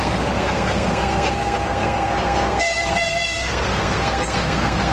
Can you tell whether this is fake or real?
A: fake